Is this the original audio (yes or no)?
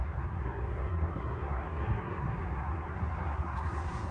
no